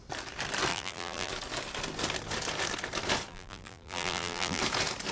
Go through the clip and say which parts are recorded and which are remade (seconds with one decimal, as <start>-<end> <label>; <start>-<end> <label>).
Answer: 0.0-0.7 recorded; 0.7-1.3 remade; 1.3-3.3 recorded; 3.3-4.6 remade; 4.6-5.1 recorded